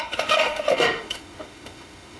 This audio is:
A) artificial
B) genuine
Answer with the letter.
A